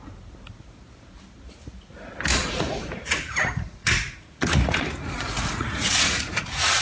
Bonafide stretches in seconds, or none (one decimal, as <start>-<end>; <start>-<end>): 0.0-2.3